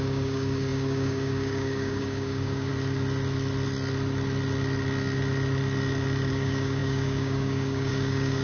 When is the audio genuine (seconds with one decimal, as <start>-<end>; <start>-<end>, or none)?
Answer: 2.7-6.3